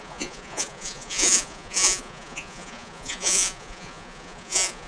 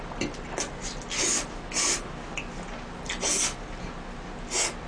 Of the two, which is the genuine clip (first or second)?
second